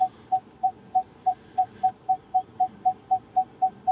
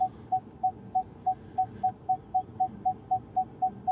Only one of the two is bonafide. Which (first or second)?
second